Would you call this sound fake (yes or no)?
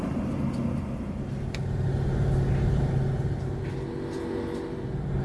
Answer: no